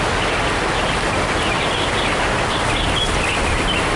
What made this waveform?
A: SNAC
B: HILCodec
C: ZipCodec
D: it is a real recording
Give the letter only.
D